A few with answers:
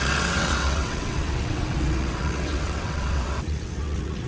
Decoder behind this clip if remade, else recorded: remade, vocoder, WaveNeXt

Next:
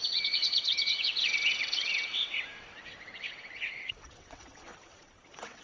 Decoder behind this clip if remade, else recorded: remade, vocoder, WaveNeXt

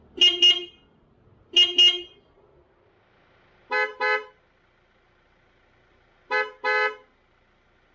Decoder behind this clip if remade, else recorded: recorded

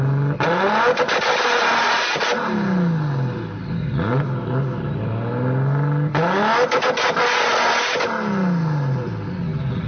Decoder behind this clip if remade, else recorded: recorded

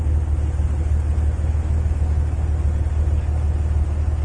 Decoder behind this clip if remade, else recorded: recorded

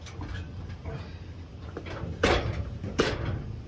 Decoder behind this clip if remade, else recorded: recorded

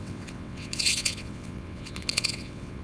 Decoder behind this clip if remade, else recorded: remade, vocoder, WaveNeXt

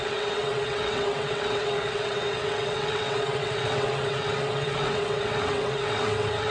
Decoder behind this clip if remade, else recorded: remade, vocoder, WaveNeXt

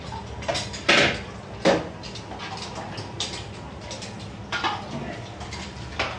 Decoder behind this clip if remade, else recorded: recorded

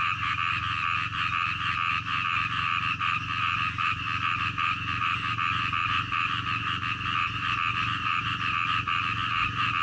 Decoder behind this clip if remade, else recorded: recorded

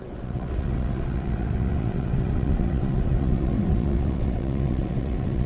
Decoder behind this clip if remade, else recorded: remade, vocoder, WaveNeXt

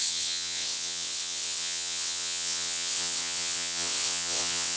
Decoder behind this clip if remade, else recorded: remade, vocoder, WaveNeXt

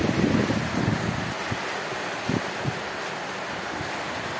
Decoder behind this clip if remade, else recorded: recorded